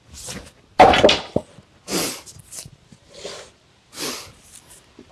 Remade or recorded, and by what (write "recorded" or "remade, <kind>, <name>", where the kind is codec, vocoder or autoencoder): recorded